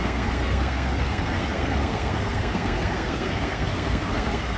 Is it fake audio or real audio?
fake